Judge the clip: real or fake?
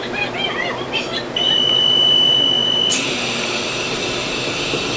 real